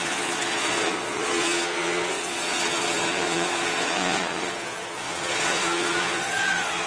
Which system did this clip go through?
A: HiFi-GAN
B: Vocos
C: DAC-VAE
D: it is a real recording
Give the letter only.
B